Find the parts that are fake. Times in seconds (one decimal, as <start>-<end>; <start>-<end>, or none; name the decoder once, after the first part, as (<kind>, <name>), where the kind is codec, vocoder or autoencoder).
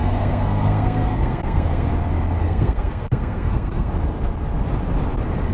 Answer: 0.0-1.9 (codec, SNAC); 2.4-3.9